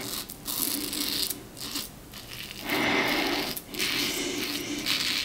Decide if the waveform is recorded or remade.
recorded